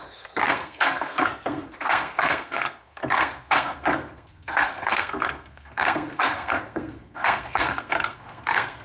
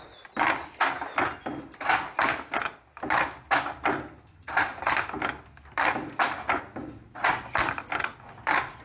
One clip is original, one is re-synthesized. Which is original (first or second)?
second